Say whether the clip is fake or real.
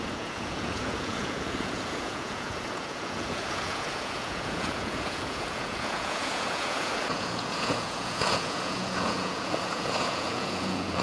fake